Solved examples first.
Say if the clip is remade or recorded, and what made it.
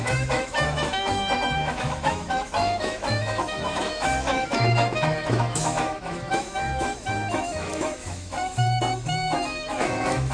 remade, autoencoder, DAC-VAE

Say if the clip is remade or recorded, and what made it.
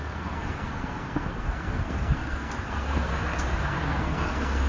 remade, codec, SNAC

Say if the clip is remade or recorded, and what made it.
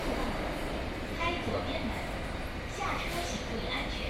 recorded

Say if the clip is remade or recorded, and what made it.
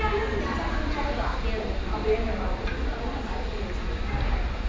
recorded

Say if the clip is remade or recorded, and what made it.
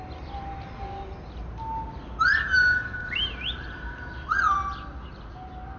recorded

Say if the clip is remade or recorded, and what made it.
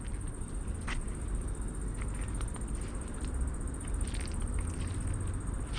recorded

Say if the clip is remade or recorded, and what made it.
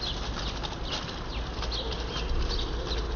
recorded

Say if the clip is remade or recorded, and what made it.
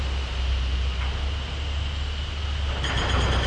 recorded